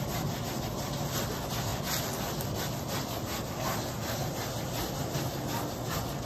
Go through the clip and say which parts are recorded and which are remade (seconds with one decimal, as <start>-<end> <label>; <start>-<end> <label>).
0.0-6.3 recorded